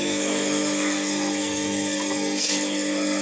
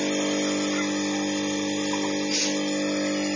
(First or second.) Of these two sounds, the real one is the second